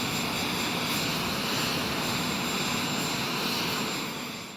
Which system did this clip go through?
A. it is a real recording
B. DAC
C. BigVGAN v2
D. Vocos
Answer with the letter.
A